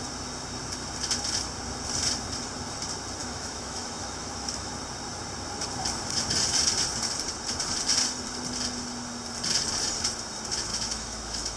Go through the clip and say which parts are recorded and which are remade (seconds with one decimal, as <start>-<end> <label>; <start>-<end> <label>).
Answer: 0.0-3.2 recorded; 3.2-4.7 remade; 4.7-10.7 recorded; 10.7-11.6 remade